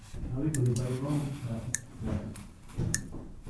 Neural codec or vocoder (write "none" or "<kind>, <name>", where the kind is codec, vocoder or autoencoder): vocoder, BigVGAN v2